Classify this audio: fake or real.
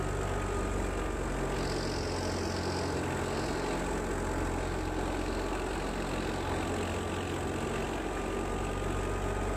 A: real